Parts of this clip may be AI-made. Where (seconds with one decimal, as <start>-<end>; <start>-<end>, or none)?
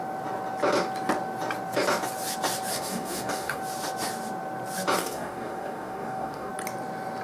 2.7-3.6; 5.0-6.5